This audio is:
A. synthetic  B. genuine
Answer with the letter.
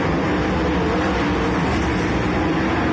B